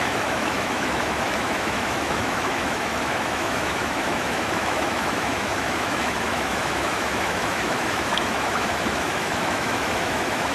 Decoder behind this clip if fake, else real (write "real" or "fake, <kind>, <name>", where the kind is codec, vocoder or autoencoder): fake, autoencoder, DAC-VAE